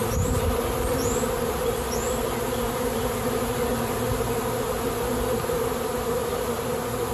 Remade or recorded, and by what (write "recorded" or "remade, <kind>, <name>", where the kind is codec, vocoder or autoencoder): recorded